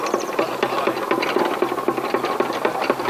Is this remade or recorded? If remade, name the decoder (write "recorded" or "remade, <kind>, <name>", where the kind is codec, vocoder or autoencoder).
recorded